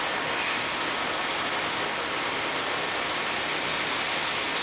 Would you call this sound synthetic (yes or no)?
no